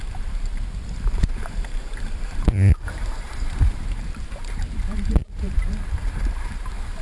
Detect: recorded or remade remade